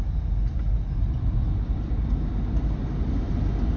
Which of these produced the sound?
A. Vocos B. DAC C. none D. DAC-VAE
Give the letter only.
C